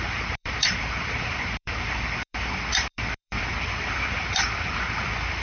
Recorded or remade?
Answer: remade